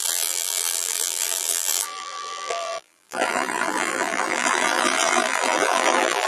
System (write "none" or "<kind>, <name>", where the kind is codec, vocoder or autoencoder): vocoder, BigVGAN v2